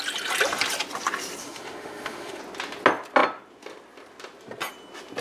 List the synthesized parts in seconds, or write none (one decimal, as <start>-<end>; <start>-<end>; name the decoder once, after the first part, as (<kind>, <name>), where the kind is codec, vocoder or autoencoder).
1.4-2.4 (autoencoder, DAC-VAE)